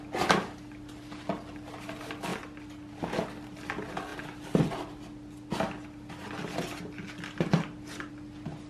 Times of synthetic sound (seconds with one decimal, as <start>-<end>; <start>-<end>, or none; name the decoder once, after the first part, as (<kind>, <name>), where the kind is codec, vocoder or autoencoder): none